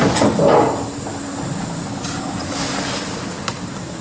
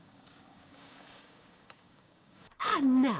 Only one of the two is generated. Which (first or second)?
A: second